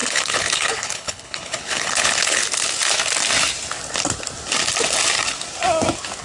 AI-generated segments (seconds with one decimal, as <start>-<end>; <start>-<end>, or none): 0.0-2.4